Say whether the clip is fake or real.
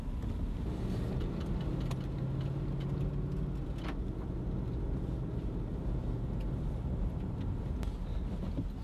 real